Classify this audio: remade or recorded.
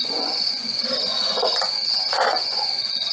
remade